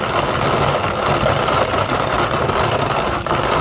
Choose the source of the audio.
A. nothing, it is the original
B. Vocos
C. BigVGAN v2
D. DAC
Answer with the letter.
A